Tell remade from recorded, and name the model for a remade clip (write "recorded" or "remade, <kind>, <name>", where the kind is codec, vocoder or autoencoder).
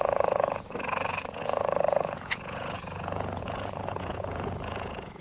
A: remade, vocoder, Vocos